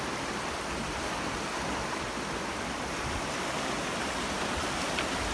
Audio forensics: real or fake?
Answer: real